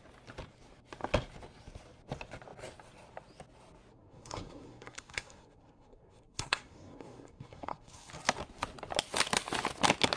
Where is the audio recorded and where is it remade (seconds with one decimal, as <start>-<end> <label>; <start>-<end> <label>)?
0.0-3.9 recorded; 3.9-8.1 remade; 8.1-10.2 recorded